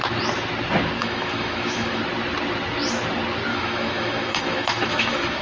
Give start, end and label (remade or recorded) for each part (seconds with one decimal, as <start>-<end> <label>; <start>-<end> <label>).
0.0-1.0 recorded; 1.0-2.0 remade; 2.0-3.5 recorded; 3.5-5.4 remade